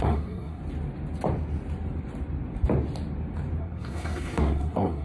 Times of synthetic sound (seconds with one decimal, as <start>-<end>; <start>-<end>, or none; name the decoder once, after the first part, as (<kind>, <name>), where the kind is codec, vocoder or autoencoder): 0.0-0.6 (codec, SNAC); 3.6-5.0